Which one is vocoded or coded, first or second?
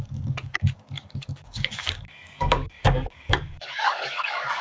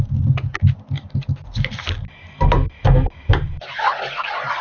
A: first